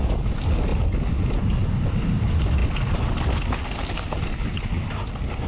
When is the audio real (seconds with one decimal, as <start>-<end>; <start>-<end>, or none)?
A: 0.0-5.5